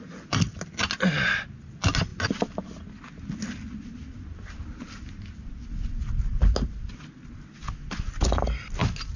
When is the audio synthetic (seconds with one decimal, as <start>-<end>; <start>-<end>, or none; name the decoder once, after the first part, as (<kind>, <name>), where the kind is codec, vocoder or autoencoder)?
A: none